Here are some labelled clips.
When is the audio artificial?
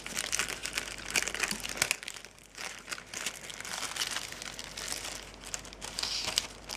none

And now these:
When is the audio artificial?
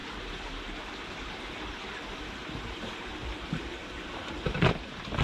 none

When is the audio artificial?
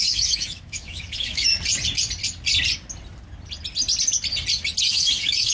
0.0-1.5 (autoencoder, DAC-VAE); 4.8-5.5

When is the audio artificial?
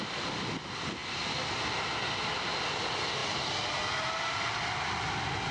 none